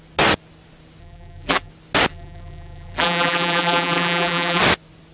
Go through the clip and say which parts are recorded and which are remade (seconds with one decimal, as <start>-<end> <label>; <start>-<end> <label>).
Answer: 0.0-1.0 recorded; 1.0-1.7 remade; 1.7-2.1 recorded; 2.1-4.6 remade; 4.6-5.1 recorded